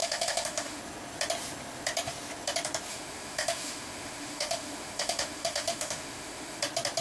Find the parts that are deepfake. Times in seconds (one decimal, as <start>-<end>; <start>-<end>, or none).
0.0-0.8; 2.9-6.6